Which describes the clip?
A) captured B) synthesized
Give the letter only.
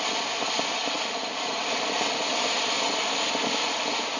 A